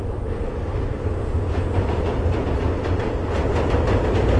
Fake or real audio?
real